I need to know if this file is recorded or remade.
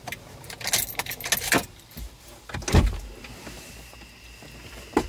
recorded